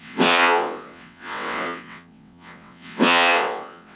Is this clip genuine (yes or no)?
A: no